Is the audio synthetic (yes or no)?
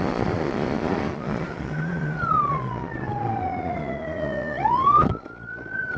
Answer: yes